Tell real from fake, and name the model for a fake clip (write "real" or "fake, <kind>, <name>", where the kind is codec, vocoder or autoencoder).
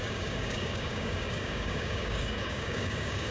fake, codec, DAC